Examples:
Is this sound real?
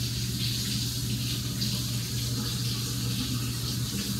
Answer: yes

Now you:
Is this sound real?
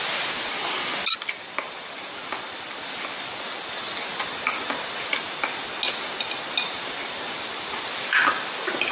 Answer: yes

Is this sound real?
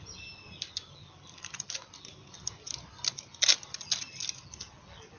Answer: yes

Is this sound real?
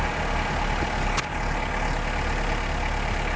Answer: yes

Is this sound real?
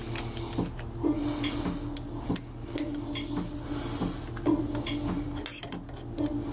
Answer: yes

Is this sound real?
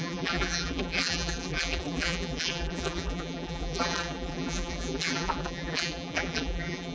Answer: no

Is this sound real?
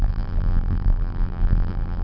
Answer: no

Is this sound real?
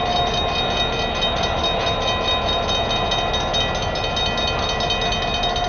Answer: yes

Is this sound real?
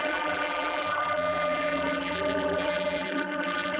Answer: no